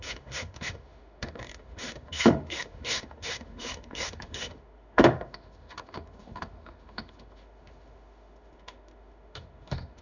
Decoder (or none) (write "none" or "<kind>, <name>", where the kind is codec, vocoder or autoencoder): autoencoder, DAC-VAE